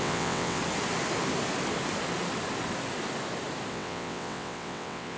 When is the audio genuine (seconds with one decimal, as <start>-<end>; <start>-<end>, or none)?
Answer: 0.6-3.7